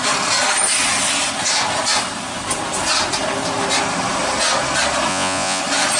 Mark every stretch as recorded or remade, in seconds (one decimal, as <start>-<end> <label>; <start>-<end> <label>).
0.0-5.1 recorded; 5.1-5.6 remade; 5.6-6.0 recorded